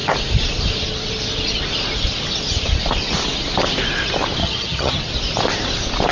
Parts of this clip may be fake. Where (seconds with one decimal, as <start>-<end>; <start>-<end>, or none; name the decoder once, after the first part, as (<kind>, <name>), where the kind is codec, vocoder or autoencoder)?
4.4-5.0 (vocoder, HiFi-GAN)